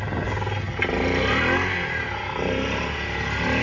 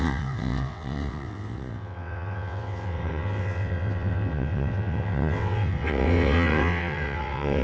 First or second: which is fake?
second